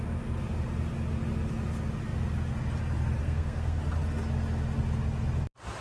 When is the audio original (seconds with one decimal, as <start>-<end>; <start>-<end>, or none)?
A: 0.0-3.2; 3.8-5.8